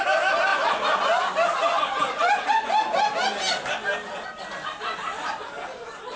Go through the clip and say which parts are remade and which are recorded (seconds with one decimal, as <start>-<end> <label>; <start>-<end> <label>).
0.0-6.2 recorded

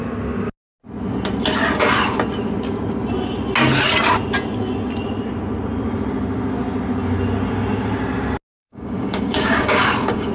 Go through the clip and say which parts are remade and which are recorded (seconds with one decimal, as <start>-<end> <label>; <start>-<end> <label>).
0.0-8.6 recorded; 8.6-10.3 remade